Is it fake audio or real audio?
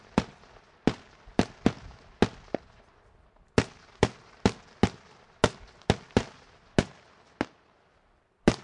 real